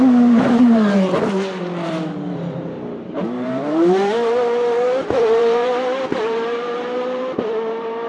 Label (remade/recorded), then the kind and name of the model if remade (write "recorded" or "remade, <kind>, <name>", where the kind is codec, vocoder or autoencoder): remade, vocoder, BigVGAN v2